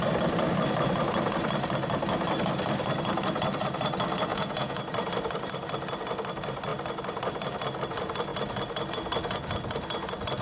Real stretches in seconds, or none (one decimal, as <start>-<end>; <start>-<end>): 0.0-4.3; 4.8-10.4